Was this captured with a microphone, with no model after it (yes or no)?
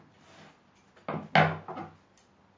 yes